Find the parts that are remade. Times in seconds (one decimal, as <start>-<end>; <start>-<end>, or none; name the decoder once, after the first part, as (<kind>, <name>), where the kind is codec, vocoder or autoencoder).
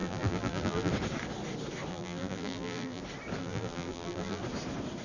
0.0-0.9 (vocoder, BigVGAN v2); 1.9-3.0; 3.4-4.4